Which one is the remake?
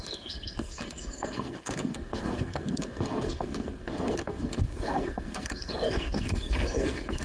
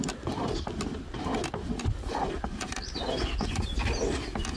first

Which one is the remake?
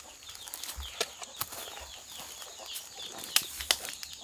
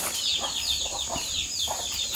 second